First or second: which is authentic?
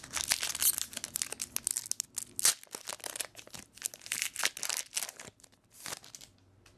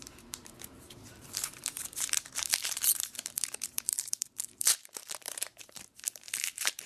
first